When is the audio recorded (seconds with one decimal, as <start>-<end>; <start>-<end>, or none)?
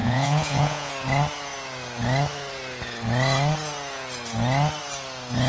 0.9-5.5